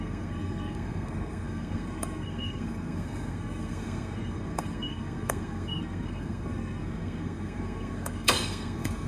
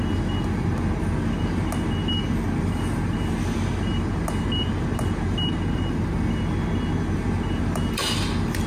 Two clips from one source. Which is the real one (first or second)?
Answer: second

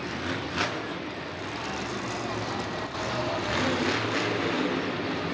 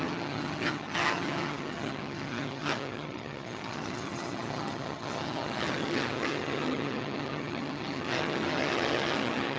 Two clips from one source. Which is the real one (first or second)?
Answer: first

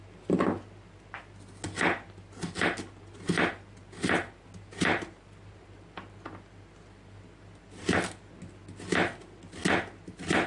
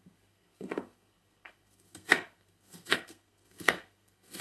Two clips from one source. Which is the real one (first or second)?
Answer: first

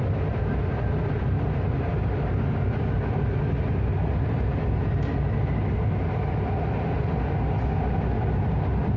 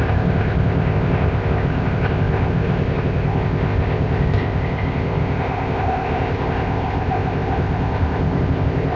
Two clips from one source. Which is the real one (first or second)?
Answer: first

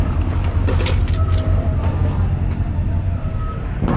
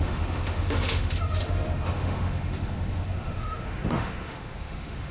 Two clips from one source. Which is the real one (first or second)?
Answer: first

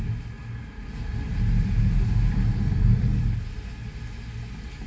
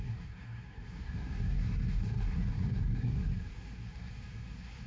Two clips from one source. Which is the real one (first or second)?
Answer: first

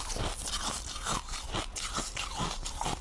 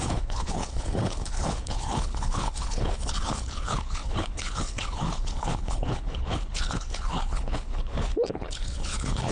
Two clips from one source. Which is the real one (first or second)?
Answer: first